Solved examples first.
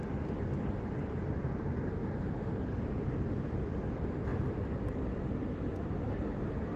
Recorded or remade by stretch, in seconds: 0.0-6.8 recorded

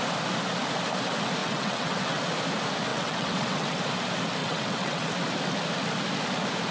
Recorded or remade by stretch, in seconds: 0.0-1.4 recorded; 1.4-2.2 remade; 2.2-2.9 recorded; 2.9-3.8 remade; 3.8-4.4 recorded; 4.4-5.1 remade; 5.1-6.7 recorded

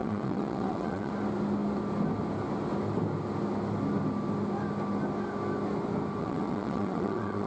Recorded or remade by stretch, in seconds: 0.0-1.1 remade; 1.1-6.2 recorded; 6.2-7.5 remade

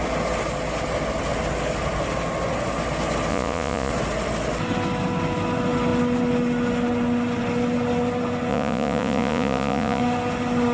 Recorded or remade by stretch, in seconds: 0.0-3.3 recorded; 3.3-3.9 remade; 3.9-8.5 recorded; 8.5-10.0 remade; 10.0-10.7 recorded

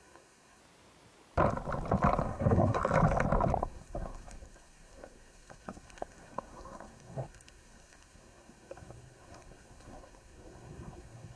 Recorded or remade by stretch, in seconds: 0.0-0.6 remade; 0.6-2.2 recorded; 2.2-2.8 remade; 2.8-3.6 recorded; 3.6-11.4 remade

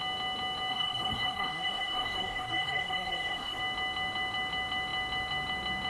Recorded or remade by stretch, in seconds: 0.0-0.7 recorded; 0.7-3.6 remade; 3.6-5.9 recorded